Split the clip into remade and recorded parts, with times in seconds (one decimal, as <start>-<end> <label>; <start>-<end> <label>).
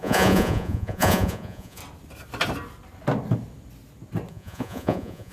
0.0-1.8 remade; 1.8-4.3 recorded; 4.3-5.3 remade